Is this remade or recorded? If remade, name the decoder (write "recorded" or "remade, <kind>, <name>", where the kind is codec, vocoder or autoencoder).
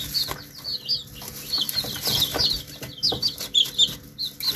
recorded